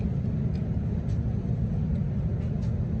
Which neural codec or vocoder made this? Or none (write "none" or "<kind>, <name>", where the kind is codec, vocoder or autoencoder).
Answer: none